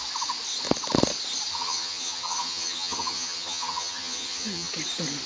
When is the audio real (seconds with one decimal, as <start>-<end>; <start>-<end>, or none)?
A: 0.0-1.5; 4.7-5.3